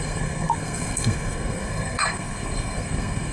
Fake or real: fake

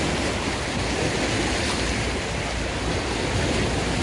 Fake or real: real